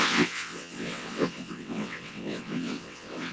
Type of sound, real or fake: fake